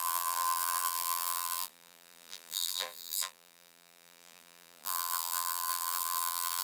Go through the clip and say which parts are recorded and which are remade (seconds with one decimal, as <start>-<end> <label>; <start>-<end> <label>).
0.0-6.6 remade